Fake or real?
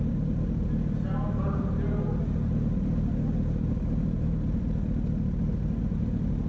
real